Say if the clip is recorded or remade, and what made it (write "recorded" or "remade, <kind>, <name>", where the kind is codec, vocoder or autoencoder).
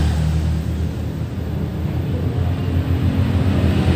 recorded